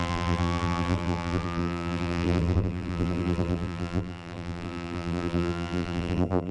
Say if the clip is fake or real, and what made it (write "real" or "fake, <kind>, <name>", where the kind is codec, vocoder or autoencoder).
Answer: fake, vocoder, BigVGAN v2